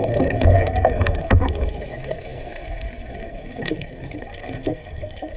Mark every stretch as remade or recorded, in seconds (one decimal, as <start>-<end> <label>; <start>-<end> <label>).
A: 0.0-5.4 remade